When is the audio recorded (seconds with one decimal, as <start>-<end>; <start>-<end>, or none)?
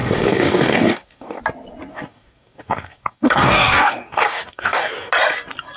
1.4-1.9; 5.1-5.8